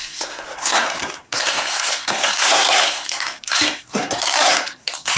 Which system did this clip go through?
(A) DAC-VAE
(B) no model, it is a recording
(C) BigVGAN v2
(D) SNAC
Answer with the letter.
D